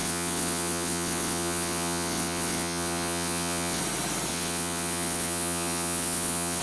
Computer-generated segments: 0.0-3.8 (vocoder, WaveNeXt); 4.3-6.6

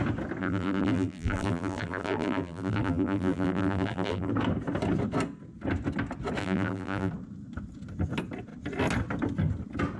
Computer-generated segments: 0.4-4.3 (vocoder, BigVGAN v2); 6.4-7.1

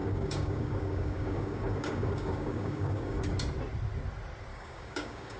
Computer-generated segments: 0.0-3.2 (codec, DAC); 4.5-5.4

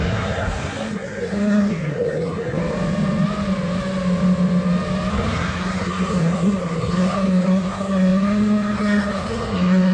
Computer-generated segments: 0.0-2.6 (codec, SNAC); 5.1-9.9

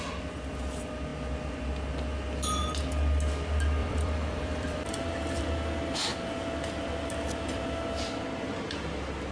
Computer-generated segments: 3.8-5.4 (vocoder, BigVGAN v2)

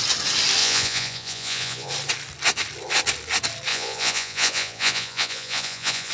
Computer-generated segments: 0.6-1.9 (vocoder, Vocos); 3.7-6.1